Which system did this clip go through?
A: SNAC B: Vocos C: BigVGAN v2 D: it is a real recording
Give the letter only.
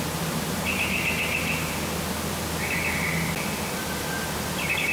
D